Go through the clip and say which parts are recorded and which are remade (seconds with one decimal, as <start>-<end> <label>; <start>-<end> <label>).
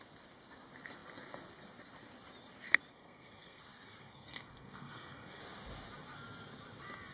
0.0-2.9 recorded; 2.9-3.6 remade; 3.6-4.0 recorded; 4.0-5.4 remade; 5.4-7.1 recorded